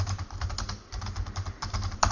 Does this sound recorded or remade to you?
recorded